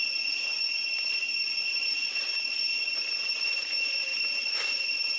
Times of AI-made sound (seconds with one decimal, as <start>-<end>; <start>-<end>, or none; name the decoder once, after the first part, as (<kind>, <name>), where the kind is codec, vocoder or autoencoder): none